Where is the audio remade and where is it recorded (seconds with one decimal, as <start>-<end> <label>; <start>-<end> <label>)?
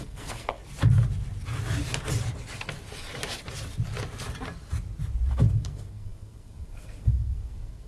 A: 0.0-0.6 remade; 0.6-5.3 recorded; 5.3-7.9 remade